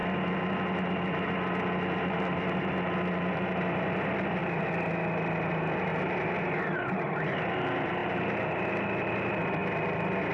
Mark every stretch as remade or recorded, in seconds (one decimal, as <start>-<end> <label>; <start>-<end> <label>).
0.0-10.3 recorded